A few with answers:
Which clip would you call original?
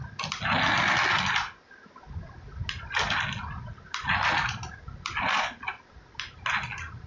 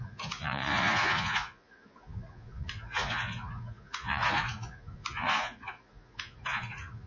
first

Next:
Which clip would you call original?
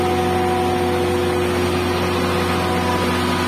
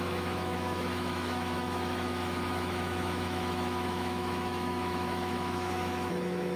first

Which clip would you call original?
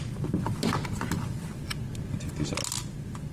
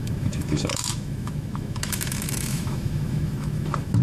first